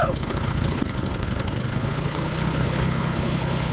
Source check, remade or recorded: remade